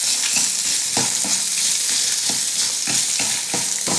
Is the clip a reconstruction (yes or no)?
no